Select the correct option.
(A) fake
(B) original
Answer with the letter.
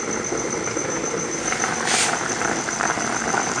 B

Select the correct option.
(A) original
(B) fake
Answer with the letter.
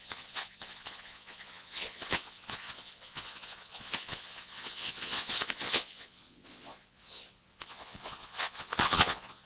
B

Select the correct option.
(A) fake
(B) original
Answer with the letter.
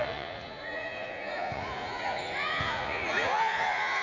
A